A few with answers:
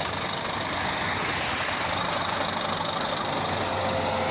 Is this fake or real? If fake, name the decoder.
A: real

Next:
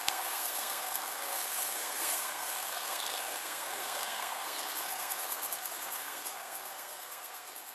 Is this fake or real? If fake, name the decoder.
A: fake, codec, SNAC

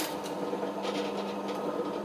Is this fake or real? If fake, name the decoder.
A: real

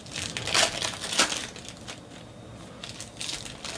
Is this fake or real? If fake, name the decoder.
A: real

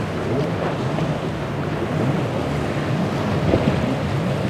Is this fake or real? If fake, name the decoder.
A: real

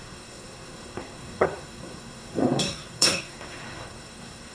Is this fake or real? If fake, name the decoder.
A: fake, codec, SNAC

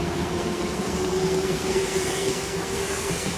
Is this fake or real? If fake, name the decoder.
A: fake, codec, SNAC